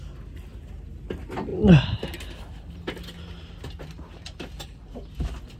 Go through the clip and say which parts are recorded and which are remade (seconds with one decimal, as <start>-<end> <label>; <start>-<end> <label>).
0.0-5.6 recorded